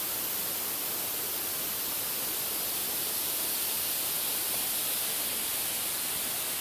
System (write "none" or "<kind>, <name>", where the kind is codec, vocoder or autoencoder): none